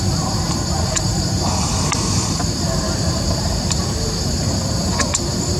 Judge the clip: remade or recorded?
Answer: remade